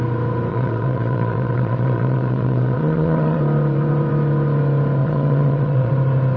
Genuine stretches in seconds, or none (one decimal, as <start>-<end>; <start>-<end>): 0.0-0.5; 3.4-5.0; 5.9-6.4